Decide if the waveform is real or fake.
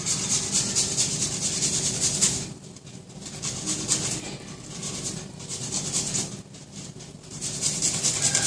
real